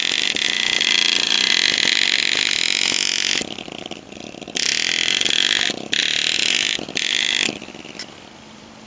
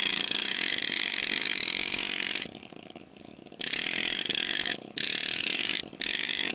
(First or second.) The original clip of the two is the first